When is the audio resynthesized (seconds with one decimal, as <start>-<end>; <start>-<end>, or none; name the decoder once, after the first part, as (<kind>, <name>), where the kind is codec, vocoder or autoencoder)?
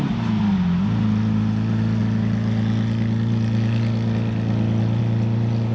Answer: none